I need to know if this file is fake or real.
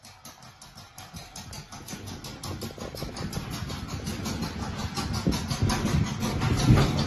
real